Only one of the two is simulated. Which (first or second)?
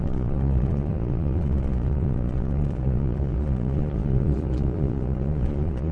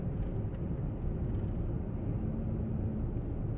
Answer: first